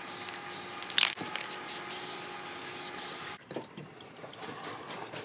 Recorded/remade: recorded